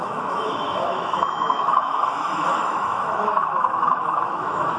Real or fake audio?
fake